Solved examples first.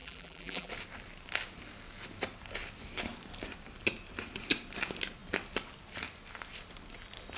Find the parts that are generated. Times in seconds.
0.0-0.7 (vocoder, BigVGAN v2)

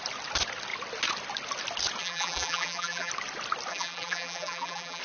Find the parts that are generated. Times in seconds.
2.0-3.1 (vocoder, BigVGAN v2); 3.7-5.0

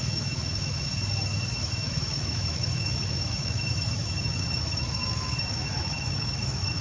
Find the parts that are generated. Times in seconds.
0.0-0.9 (autoencoder, DAC-VAE); 1.5-6.8

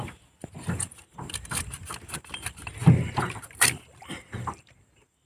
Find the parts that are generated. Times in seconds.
none